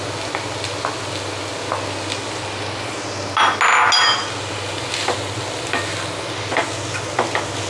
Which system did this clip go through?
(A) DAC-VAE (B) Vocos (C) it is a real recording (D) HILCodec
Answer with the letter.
C